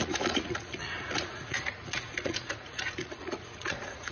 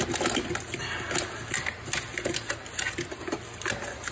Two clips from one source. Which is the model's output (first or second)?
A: first